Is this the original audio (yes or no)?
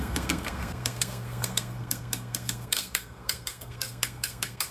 no